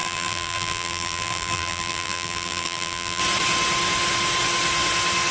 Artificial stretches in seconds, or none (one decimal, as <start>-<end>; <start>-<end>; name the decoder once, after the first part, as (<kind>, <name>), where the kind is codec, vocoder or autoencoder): 0.0-3.2 (vocoder, BigVGAN v2)